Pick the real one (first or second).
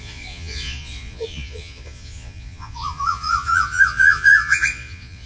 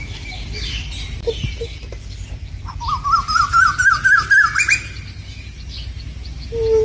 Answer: second